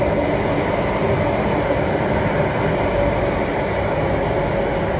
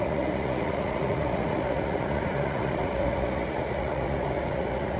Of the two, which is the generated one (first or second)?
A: second